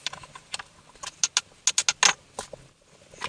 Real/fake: real